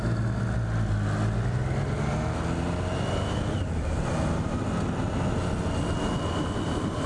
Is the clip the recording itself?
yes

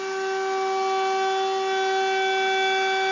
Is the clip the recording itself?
yes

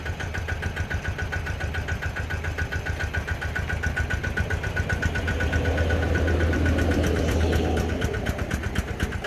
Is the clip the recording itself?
yes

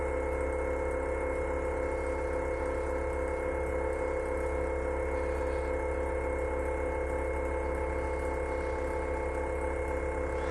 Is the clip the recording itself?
yes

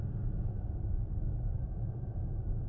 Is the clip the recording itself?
yes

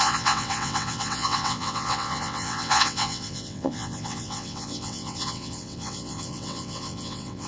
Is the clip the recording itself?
no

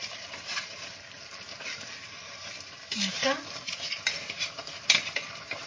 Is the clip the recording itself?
no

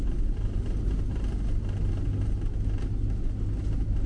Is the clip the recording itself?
yes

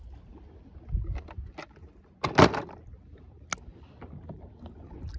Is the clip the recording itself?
yes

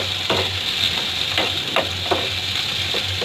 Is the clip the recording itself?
yes